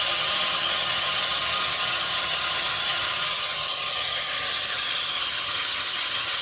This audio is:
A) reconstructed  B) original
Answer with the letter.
A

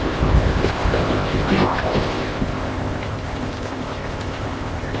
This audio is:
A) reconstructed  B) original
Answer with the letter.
A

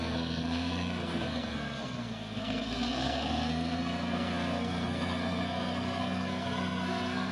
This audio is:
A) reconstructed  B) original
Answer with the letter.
A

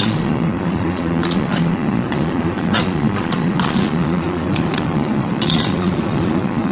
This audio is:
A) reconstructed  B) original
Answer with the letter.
A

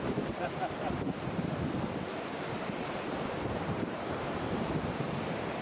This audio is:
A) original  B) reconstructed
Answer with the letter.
B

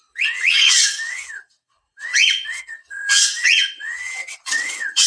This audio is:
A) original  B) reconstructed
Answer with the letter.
B